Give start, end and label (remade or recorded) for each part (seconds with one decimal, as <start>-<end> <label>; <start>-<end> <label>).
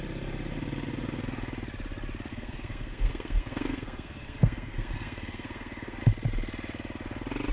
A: 0.0-2.3 recorded; 2.3-6.0 remade; 6.0-7.5 recorded